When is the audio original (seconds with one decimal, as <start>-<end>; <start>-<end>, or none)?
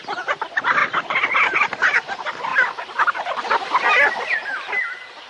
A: 0.0-2.5; 3.8-5.3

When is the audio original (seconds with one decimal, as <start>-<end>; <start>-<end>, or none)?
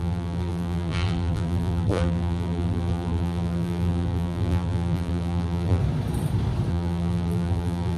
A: 5.8-6.7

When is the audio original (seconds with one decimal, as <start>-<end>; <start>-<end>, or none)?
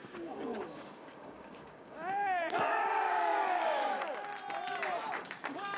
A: 4.3-5.1